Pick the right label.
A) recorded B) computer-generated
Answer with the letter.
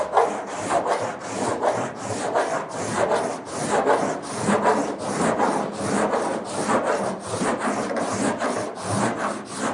A